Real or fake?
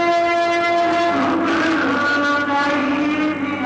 real